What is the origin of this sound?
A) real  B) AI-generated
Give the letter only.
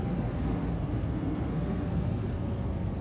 B